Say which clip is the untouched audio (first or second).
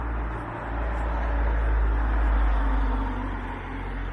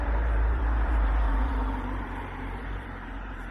first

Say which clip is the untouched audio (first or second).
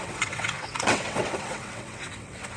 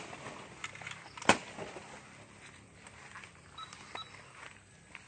second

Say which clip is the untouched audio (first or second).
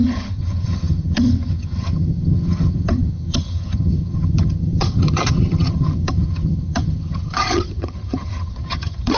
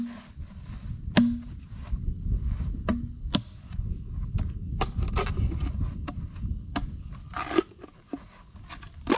second